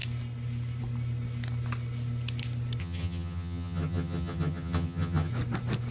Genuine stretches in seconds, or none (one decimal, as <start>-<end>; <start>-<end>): 0.0-2.8; 5.3-5.9